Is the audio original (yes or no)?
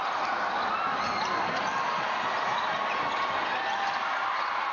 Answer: yes